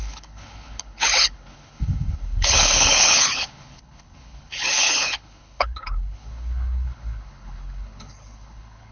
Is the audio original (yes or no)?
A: no